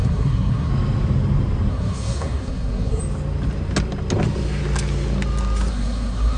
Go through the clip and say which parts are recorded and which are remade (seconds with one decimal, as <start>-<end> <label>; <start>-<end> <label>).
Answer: 0.0-0.7 remade; 0.7-1.7 recorded; 1.7-3.0 remade; 3.0-5.7 recorded; 5.7-6.4 remade